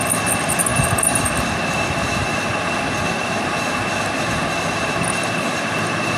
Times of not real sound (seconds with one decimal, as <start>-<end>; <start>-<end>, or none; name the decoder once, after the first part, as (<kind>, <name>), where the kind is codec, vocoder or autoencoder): none

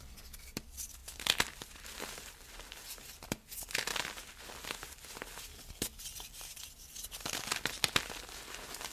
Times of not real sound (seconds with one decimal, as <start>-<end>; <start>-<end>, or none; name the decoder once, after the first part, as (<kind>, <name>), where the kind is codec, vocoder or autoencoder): none

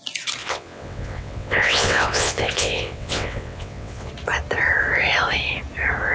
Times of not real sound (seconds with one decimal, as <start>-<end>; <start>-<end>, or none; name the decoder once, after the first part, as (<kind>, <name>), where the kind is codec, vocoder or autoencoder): 0.4-4.1 (vocoder, WaveNeXt)

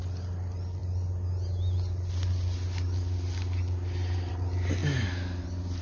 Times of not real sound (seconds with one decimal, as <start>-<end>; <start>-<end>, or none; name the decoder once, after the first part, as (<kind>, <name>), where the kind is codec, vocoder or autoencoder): none